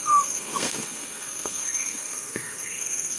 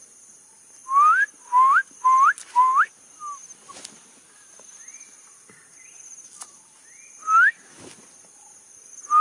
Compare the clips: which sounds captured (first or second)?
second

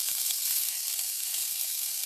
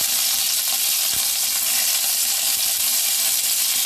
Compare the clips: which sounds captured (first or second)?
second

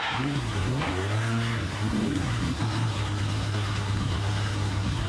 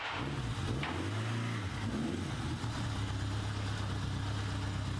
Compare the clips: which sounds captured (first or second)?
second